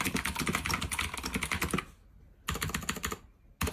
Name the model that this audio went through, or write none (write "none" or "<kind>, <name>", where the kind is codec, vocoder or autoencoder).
none